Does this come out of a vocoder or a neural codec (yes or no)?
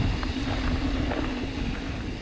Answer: no